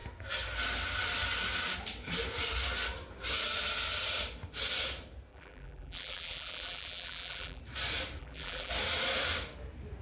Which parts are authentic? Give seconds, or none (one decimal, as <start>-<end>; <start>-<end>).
0.0-5.3; 7.6-8.2; 8.7-10.0